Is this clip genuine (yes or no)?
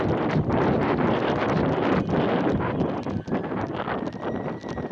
yes